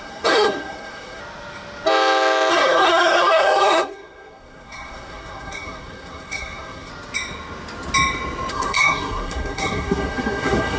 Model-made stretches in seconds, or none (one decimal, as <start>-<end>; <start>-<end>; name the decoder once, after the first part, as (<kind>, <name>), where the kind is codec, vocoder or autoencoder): 0.0-1.2 (codec, SNAC); 2.5-6.9; 8.5-10.8